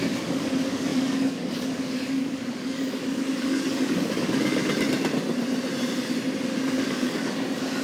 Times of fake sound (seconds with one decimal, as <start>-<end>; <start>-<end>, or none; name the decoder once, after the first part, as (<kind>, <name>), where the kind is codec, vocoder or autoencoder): 0.0-4.6 (codec, DAC); 6.7-7.8